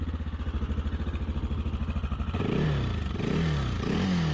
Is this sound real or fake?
real